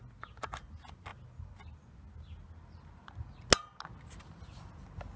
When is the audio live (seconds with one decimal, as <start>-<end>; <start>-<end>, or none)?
0.0-5.2